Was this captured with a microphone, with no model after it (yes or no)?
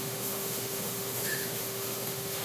no